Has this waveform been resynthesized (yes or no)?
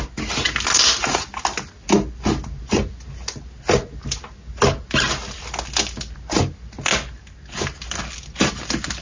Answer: no